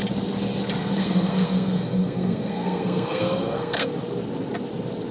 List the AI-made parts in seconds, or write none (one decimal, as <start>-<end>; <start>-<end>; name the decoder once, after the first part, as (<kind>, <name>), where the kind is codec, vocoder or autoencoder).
0.8-3.9 (codec, SNAC)